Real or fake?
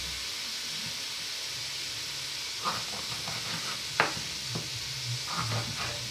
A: real